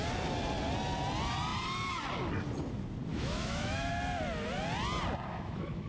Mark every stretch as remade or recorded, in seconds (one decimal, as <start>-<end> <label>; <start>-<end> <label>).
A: 0.0-3.1 recorded; 3.1-3.9 remade; 3.9-5.3 recorded; 5.3-5.9 remade